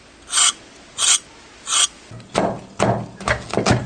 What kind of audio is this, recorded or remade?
recorded